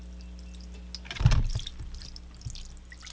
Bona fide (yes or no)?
yes